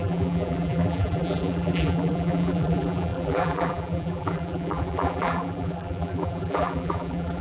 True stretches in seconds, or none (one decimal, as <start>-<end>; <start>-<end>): none